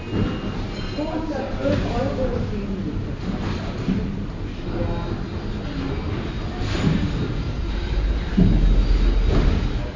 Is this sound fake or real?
real